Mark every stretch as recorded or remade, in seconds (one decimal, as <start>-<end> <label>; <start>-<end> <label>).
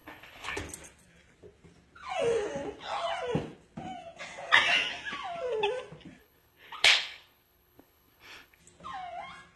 0.0-0.6 remade; 0.6-6.2 recorded; 6.2-8.6 remade; 8.6-9.6 recorded